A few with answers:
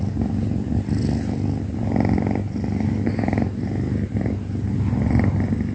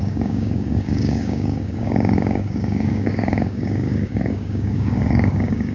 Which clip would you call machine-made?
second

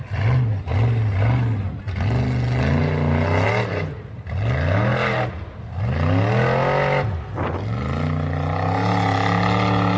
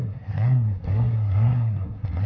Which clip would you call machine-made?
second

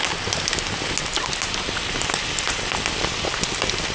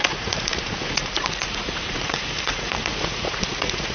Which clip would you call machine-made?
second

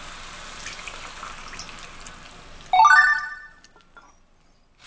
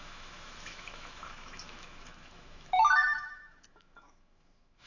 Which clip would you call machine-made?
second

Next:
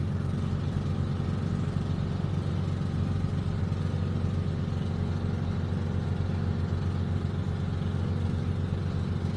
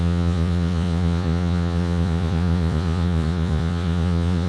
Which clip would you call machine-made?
second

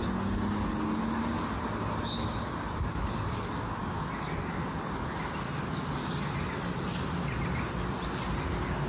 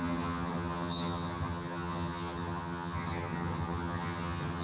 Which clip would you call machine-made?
second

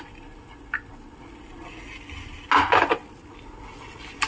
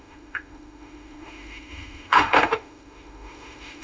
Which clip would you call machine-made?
second